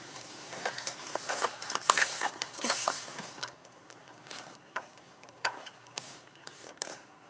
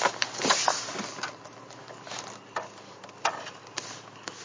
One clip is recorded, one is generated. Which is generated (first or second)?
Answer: first